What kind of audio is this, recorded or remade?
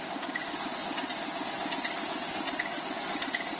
recorded